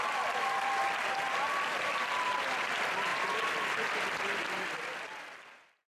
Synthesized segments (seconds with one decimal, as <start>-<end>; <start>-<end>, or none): 0.0-3.1